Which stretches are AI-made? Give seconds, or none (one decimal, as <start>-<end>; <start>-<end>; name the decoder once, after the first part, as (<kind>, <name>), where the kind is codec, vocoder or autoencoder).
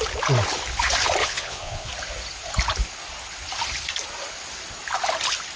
1.2-1.9 (vocoder, Vocos)